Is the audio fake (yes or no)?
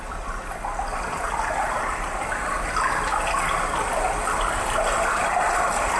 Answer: no